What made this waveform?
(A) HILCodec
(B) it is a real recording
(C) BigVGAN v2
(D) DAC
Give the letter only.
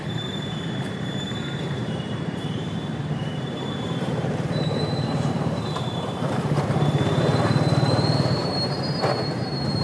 C